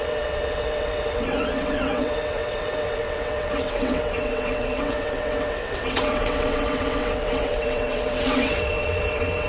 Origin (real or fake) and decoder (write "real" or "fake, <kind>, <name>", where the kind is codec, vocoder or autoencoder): fake, vocoder, WaveNeXt